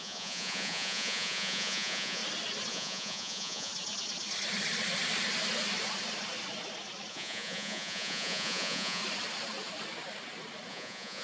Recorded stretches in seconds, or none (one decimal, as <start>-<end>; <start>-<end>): 2.2-2.7; 3.7-7.1; 9.0-10.7